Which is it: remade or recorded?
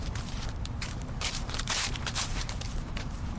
remade